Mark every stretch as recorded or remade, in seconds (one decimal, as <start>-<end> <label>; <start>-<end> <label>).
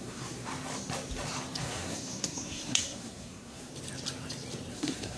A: 0.0-0.5 remade; 0.5-1.6 recorded; 1.6-3.7 remade; 3.7-4.7 recorded; 4.7-5.2 remade